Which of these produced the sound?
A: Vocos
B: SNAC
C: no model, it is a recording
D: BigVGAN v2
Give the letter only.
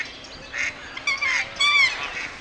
C